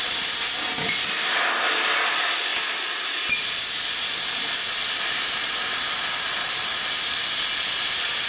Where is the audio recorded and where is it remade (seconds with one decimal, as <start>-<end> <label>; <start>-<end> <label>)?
0.0-8.3 recorded